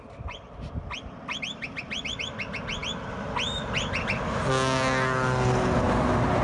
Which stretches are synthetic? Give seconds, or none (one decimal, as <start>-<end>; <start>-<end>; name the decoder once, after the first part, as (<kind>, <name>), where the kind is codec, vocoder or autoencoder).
none

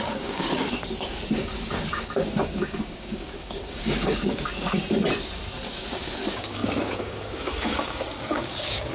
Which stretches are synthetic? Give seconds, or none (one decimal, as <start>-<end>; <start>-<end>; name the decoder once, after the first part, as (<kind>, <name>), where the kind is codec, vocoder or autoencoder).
0.0-4.8 (codec, DAC); 5.9-8.9

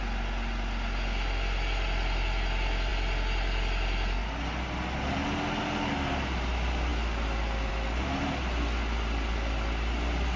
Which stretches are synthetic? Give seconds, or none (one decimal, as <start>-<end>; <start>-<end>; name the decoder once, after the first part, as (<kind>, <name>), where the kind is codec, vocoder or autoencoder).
none

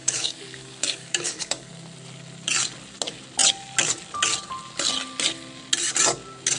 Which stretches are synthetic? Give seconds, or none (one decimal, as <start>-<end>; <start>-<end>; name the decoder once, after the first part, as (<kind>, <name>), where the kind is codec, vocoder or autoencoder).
0.0-1.7 (codec, DAC)

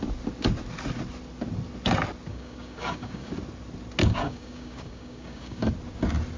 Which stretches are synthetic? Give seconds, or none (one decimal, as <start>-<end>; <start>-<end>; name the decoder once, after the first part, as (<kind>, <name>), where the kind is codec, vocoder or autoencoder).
2.3-3.3 (codec, DAC); 4.0-5.7

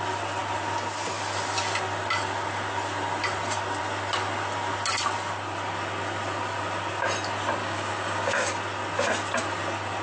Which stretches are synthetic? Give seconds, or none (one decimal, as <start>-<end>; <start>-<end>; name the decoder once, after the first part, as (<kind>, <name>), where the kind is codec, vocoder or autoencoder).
7.6-8.5 (codec, DAC)

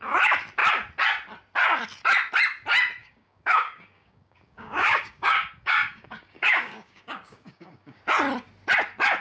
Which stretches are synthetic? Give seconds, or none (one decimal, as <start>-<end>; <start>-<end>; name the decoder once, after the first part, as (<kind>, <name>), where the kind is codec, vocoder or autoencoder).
3.0-8.0 (codec, DAC)

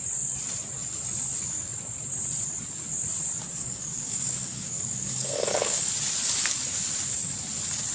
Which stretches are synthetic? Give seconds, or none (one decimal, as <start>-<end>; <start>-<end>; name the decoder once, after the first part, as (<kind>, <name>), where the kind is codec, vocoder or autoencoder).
3.6-5.9 (codec, DAC)